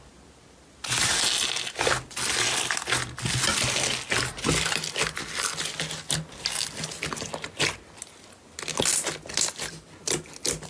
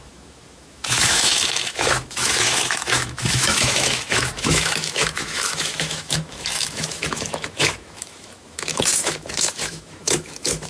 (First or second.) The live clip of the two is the first